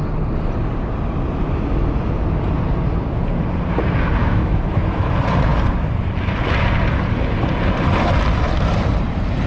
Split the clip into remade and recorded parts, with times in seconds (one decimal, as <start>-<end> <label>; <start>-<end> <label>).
0.0-4.2 recorded; 4.2-5.1 remade; 5.1-9.5 recorded